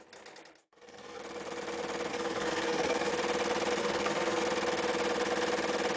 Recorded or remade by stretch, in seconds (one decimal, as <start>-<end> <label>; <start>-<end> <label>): 0.0-0.6 recorded; 0.6-1.2 remade; 1.2-2.1 recorded; 2.1-3.1 remade; 3.1-3.8 recorded; 3.8-4.4 remade; 4.4-6.0 recorded